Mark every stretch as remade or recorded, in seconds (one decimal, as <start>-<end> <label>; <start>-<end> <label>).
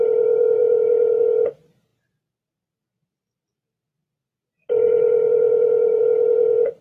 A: 0.0-6.8 recorded